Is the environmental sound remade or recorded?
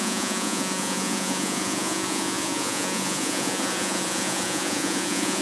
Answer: remade